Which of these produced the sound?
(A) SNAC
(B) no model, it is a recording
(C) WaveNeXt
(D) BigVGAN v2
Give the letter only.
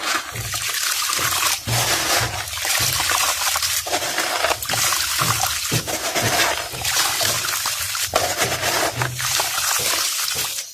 B